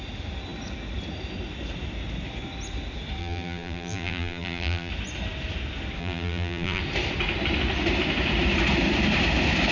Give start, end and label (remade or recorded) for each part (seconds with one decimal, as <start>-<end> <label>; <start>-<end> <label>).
0.0-3.2 recorded; 3.2-4.9 remade; 4.9-6.0 recorded; 6.0-6.8 remade; 6.8-9.7 recorded